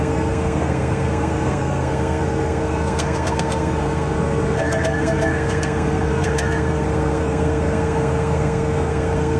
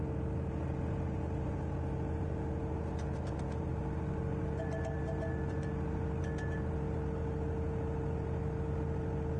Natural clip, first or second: second